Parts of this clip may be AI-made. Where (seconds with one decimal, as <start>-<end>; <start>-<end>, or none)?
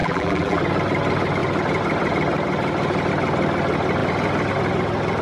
0.0-0.6